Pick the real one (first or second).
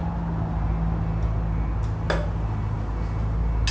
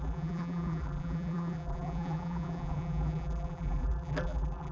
first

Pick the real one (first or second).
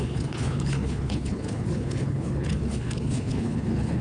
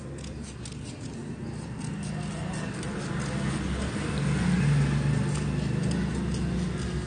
second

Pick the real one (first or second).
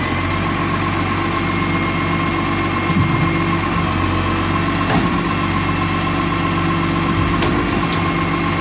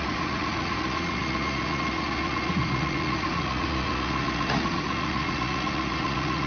first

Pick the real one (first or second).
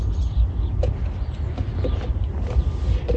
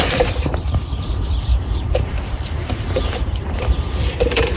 first